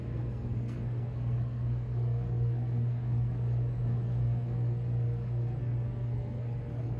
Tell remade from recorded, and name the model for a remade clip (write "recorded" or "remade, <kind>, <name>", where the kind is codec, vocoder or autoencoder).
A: remade, codec, SNAC